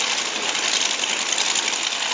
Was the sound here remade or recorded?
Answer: recorded